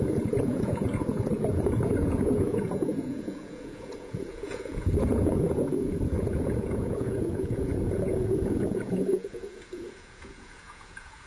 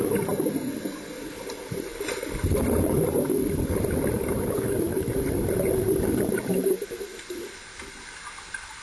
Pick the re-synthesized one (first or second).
first